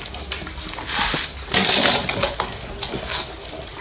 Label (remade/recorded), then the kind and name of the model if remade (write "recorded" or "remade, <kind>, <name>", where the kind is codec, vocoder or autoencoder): recorded